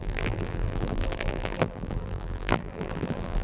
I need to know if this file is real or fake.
fake